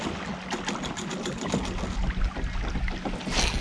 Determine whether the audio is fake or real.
real